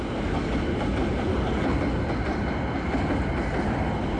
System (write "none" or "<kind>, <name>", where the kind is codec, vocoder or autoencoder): none